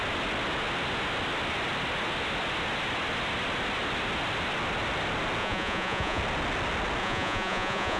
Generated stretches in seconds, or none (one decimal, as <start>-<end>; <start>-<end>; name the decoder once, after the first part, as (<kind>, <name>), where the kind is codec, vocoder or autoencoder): 5.4-6.2 (vocoder, Vocos); 7.0-8.0